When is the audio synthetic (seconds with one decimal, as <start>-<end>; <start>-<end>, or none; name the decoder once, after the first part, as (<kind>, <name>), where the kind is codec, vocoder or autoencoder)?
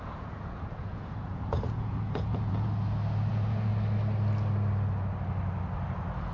0.0-2.7 (vocoder, Vocos); 3.3-3.7